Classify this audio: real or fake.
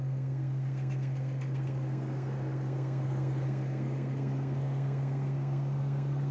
fake